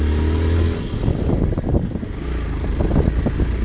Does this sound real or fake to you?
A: real